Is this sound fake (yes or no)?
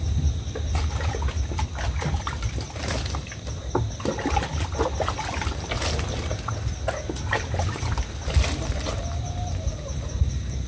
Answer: no